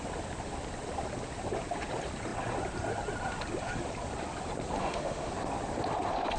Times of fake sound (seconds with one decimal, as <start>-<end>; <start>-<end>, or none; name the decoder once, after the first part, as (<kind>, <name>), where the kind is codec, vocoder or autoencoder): 4.8-5.3 (autoencoder, DAC-VAE)